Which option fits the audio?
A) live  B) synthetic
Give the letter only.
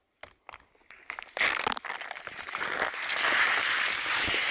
A